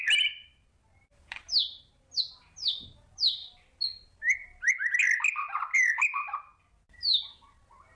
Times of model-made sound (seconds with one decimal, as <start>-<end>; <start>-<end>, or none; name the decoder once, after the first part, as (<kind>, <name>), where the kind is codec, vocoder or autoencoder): 5.7-6.5 (vocoder, BigVGAN v2)